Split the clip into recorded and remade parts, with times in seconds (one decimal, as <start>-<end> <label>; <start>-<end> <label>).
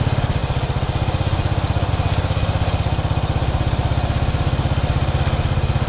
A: 0.0-5.9 recorded